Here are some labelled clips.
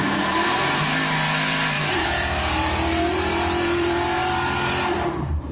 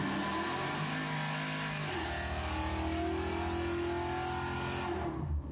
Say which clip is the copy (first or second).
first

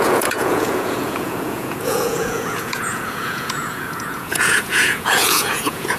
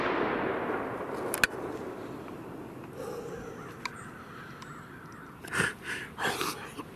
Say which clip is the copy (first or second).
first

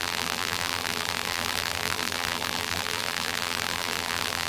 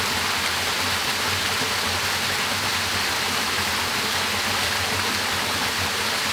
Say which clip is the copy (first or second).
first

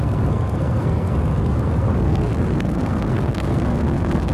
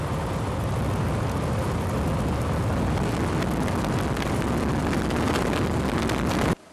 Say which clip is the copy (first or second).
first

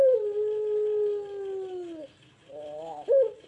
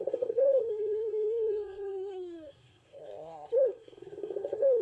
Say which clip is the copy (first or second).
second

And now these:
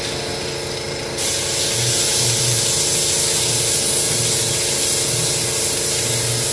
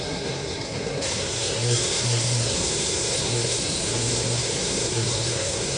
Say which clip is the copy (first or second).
second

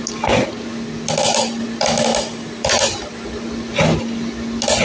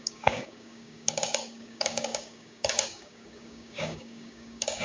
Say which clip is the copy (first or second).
second